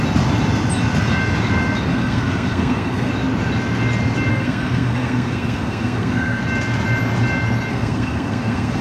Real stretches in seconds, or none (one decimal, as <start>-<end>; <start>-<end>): 0.0-1.9; 3.1-4.3; 6.4-7.7